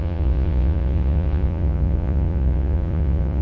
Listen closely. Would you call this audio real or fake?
fake